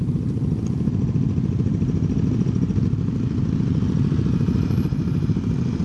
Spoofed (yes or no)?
no